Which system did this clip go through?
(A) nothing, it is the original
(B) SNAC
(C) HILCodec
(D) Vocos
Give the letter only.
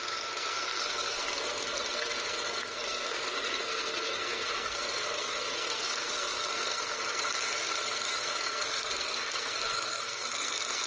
B